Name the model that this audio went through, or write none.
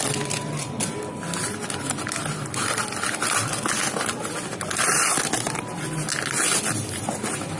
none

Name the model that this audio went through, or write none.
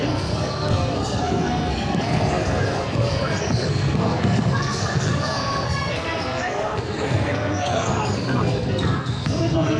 codec, SNAC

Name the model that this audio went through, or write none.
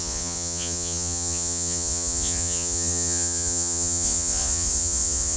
vocoder, Vocos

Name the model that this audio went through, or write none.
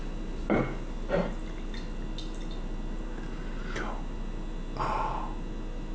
none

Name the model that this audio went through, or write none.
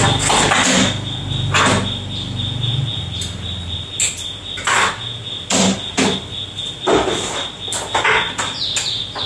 none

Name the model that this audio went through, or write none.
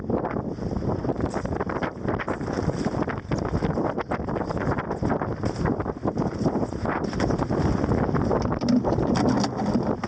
none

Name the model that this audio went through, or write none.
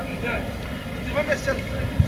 none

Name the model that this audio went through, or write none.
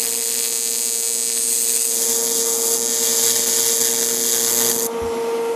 none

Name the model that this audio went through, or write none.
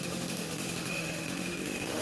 autoencoder, DAC-VAE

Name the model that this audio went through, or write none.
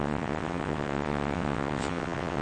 vocoder, WaveNeXt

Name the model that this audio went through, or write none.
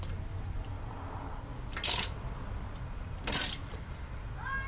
none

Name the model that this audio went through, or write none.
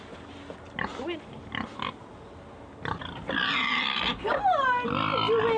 none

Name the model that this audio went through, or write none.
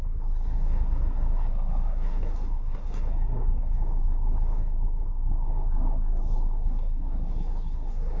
codec, SNAC